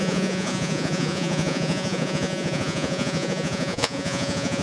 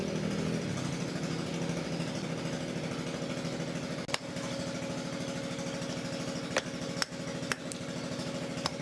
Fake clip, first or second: first